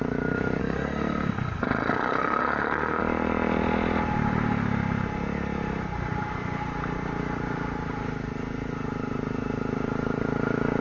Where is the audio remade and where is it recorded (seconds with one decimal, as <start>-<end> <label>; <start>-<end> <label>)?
0.0-0.6 recorded; 0.6-3.0 remade; 3.0-10.8 recorded